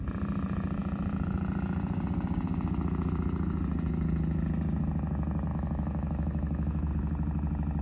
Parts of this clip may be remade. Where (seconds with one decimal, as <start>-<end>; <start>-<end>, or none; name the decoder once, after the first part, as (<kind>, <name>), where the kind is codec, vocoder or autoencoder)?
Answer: 5.5-6.9 (autoencoder, DAC-VAE)